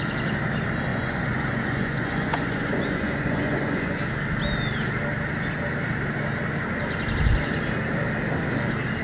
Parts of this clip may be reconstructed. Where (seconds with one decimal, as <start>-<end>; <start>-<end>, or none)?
0.9-4.0